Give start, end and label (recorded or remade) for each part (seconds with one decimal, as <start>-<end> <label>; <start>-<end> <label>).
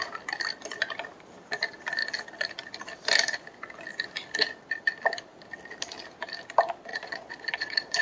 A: 0.0-6.9 recorded; 6.9-8.0 remade